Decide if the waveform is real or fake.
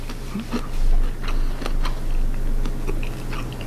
real